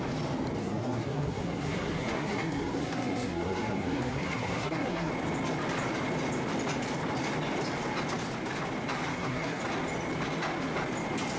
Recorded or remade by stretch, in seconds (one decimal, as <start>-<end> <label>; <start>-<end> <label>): 0.0-0.6 recorded; 0.6-5.1 remade; 5.1-9.1 recorded; 9.1-9.6 remade; 9.6-11.4 recorded